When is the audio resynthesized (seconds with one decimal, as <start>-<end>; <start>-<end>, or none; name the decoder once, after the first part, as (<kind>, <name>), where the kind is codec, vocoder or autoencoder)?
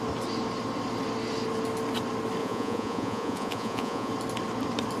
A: 2.4-4.1 (vocoder, Vocos)